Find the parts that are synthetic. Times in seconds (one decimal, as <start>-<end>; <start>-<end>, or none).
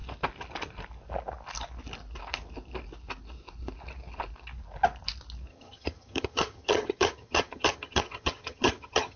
5.5-9.2